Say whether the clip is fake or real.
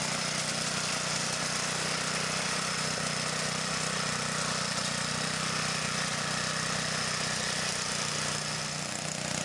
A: real